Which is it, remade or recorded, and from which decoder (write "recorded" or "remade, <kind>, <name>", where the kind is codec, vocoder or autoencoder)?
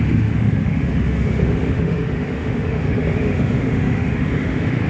remade, autoencoder, DAC-VAE